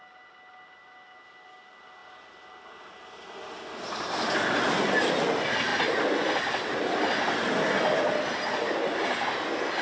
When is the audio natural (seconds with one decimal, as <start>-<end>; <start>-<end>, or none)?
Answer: 0.0-9.8